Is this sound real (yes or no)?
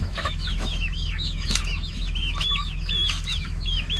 no